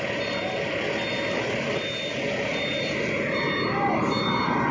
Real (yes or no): yes